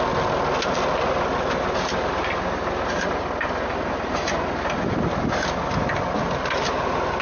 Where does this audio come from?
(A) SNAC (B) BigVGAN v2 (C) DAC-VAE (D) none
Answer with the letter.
D